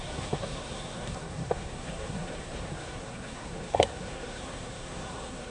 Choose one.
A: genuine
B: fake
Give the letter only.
B